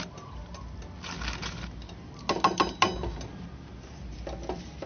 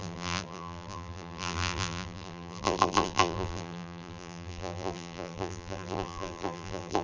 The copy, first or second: second